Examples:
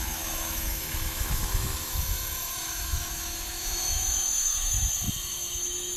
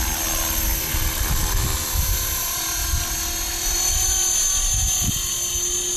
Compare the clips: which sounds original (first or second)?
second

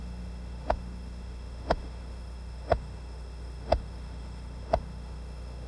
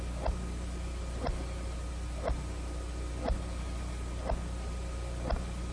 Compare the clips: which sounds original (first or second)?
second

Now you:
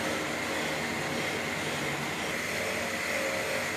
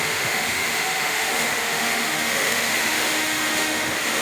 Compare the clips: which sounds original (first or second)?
first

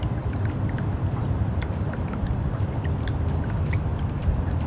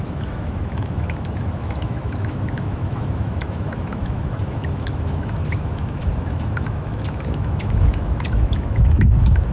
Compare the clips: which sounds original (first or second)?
first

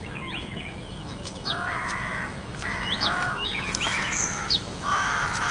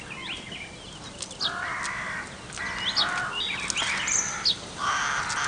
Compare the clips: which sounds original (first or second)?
second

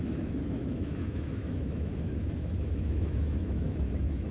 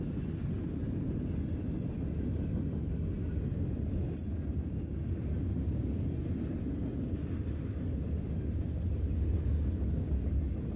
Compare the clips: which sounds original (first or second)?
second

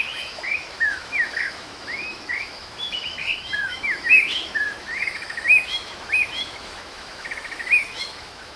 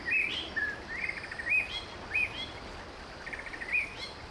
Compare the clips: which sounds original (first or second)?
second